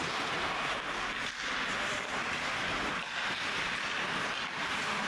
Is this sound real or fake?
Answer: real